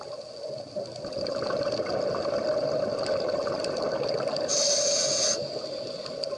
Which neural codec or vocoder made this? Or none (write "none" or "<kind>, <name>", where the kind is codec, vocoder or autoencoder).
none